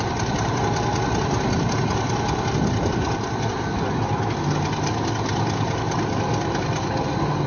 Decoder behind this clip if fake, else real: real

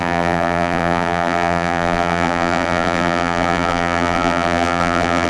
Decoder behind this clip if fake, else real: fake, vocoder, BigVGAN v2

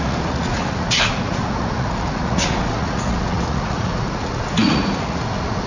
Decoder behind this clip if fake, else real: fake, vocoder, Vocos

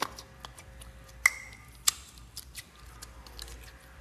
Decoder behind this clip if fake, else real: real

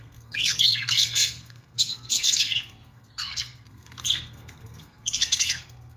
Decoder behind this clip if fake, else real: fake, codec, SNAC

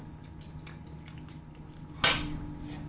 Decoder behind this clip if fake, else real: real